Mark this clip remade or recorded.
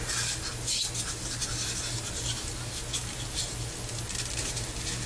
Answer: recorded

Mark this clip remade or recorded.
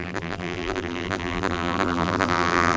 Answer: remade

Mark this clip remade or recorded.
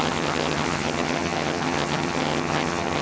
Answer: remade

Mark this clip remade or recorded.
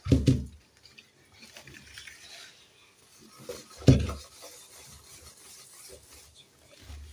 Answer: recorded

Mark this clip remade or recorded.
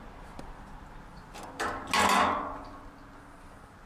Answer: recorded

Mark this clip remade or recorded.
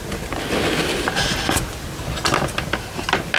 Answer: recorded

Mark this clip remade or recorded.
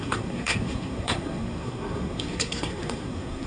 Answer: remade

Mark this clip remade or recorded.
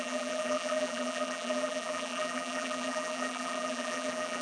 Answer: remade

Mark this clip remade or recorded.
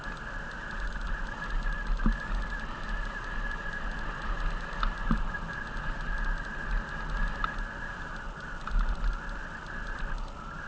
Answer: recorded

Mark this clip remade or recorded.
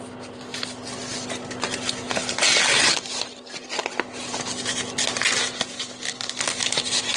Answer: recorded